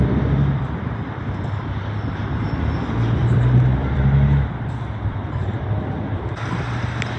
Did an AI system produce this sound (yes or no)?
yes